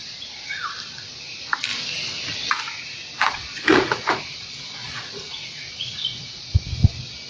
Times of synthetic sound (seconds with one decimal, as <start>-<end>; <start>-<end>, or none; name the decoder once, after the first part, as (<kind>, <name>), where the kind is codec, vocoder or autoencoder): 0.0-0.6 (vocoder, Vocos); 3.2-6.4